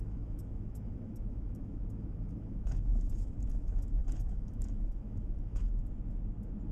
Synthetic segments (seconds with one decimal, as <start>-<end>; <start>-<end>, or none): 0.0-5.8